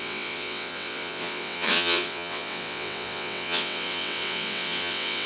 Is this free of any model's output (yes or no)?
no